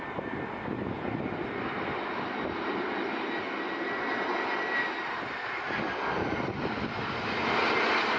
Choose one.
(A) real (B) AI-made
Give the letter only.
A